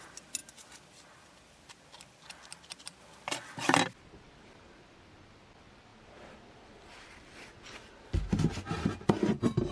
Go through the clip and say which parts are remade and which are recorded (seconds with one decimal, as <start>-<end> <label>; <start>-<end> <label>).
0.0-9.7 recorded

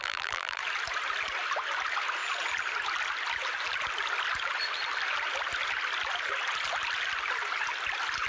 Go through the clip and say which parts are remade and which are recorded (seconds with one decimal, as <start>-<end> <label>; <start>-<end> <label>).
0.0-0.6 remade; 0.6-8.3 recorded

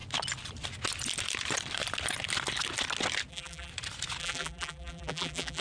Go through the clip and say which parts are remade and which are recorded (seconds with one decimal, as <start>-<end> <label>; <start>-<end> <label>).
0.0-3.3 recorded; 3.3-3.7 remade; 3.7-4.2 recorded; 4.2-5.6 remade

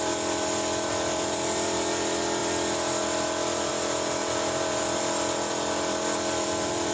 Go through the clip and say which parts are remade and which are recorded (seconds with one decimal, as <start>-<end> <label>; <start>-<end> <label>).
0.0-6.9 remade

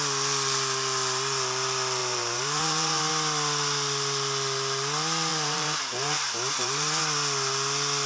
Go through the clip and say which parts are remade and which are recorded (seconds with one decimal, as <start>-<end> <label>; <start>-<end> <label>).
0.0-2.0 recorded; 2.0-3.1 remade; 3.1-5.3 recorded; 5.3-7.0 remade; 7.0-8.1 recorded

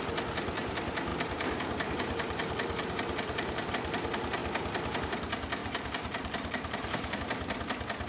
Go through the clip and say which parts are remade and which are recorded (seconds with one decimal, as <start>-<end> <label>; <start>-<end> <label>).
0.0-1.1 recorded; 1.1-3.7 remade; 3.7-5.6 recorded; 5.6-7.2 remade; 7.2-8.1 recorded

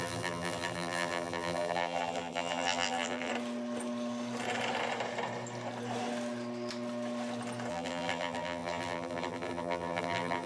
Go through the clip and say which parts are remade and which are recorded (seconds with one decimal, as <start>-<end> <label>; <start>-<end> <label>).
0.0-3.3 remade; 3.3-7.7 recorded; 7.7-10.5 remade